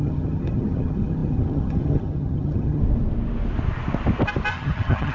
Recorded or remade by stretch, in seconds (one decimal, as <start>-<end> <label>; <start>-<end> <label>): 0.0-2.8 remade; 2.8-4.5 recorded; 4.5-5.1 remade